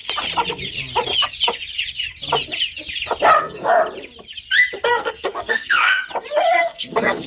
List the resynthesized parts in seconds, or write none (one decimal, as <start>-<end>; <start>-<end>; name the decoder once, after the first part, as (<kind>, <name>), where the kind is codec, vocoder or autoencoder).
3.4-3.8 (codec, SNAC); 4.9-6.0; 6.6-7.3